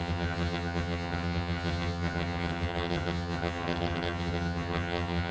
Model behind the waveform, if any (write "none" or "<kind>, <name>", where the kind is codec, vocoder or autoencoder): vocoder, HiFi-GAN